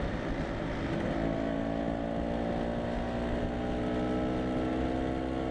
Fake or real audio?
real